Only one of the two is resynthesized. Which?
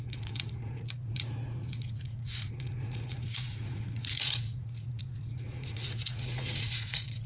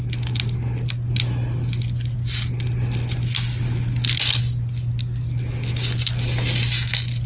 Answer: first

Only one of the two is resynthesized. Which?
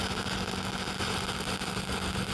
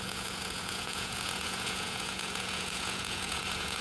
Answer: second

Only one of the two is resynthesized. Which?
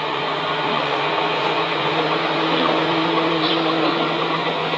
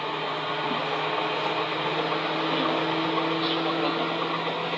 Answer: first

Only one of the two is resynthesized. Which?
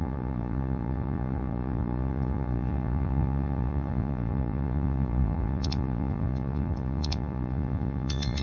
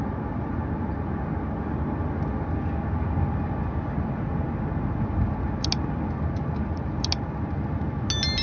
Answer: first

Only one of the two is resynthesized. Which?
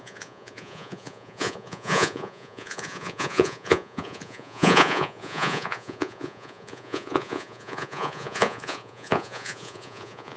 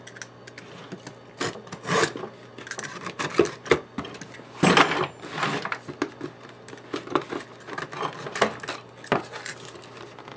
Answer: first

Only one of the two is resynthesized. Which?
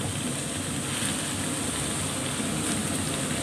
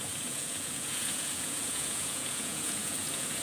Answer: second